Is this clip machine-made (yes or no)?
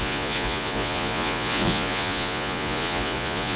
yes